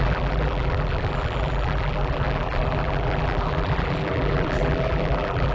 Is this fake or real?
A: fake